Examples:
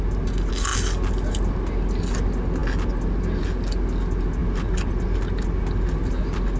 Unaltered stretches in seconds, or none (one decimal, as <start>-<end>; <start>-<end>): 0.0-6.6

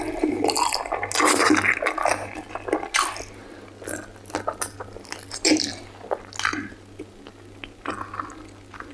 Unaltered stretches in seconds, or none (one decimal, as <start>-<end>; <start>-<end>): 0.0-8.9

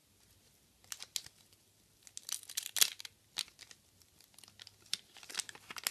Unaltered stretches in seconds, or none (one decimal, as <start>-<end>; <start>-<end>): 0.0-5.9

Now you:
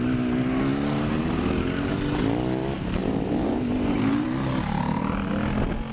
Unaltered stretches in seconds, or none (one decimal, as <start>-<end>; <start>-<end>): 0.0-3.0; 5.3-5.9